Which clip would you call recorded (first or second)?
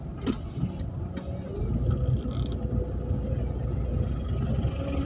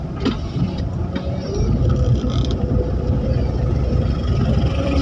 first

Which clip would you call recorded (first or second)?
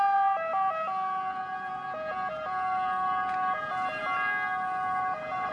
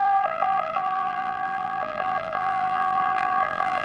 first